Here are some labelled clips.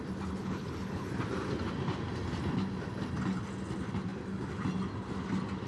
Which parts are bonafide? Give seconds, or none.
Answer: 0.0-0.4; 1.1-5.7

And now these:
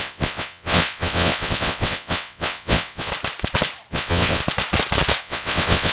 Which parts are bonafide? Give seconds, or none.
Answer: 3.1-3.9; 4.4-5.2

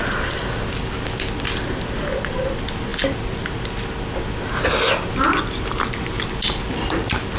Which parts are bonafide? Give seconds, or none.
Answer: 0.0-7.4

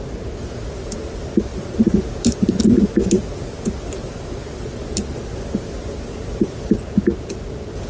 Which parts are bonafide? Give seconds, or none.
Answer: 0.0-7.9

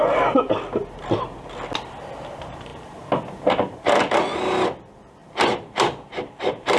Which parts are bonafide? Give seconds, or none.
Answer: 0.0-5.2